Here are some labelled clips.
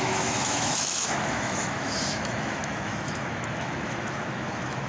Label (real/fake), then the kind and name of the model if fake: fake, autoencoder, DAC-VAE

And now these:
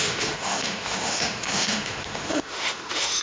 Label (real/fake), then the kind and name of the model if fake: fake, autoencoder, DAC-VAE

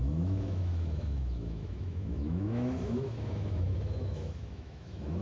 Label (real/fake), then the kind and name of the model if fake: fake, autoencoder, DAC-VAE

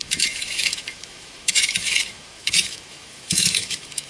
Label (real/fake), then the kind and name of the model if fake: fake, autoencoder, DAC-VAE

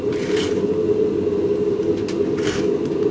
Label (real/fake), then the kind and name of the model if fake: real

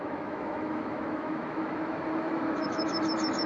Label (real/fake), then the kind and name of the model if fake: fake, autoencoder, DAC-VAE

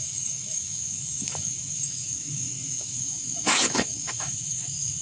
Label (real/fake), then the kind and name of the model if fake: fake, autoencoder, DAC-VAE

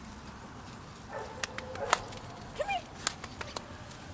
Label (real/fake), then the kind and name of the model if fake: real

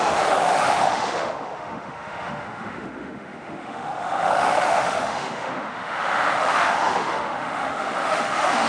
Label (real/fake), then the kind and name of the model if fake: fake, autoencoder, DAC-VAE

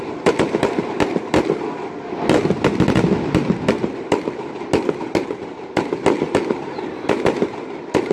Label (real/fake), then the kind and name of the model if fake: real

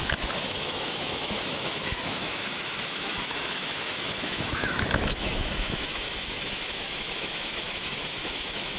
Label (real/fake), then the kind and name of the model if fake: fake, autoencoder, DAC-VAE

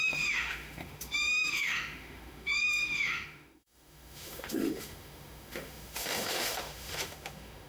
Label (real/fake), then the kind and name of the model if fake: fake, autoencoder, DAC-VAE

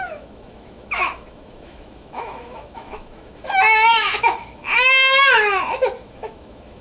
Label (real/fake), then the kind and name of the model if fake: fake, autoencoder, DAC-VAE